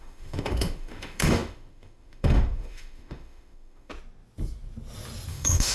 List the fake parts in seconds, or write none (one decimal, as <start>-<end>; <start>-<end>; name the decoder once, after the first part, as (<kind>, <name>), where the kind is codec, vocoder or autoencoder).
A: 0.0-3.9 (autoencoder, DAC-VAE); 5.3-5.7